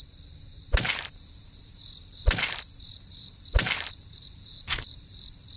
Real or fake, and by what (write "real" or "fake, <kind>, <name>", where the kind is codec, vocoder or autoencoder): fake, vocoder, BigVGAN v2